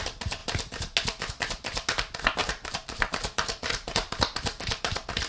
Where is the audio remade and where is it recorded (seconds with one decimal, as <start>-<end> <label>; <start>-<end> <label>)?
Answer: 0.0-2.4 recorded; 2.4-4.1 remade; 4.1-5.3 recorded